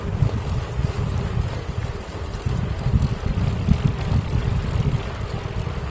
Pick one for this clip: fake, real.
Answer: real